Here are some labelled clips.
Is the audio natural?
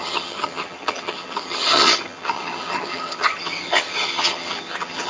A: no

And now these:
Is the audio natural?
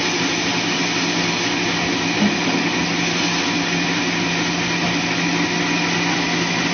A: yes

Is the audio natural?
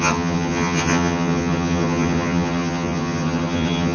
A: no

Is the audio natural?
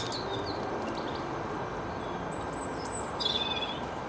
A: yes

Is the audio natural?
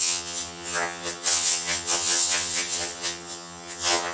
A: no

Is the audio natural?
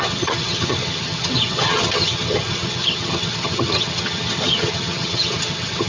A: no